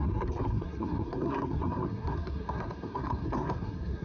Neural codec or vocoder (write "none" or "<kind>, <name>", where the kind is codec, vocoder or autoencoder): codec, SNAC